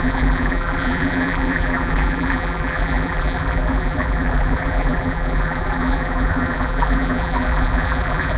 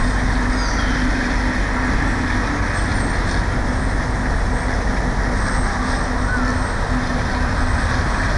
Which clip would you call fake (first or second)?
first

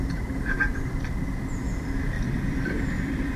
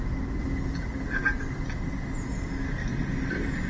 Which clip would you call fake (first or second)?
first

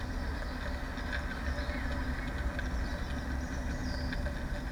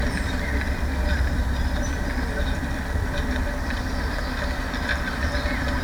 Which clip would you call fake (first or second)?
second